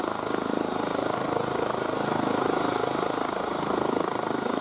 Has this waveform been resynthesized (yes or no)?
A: yes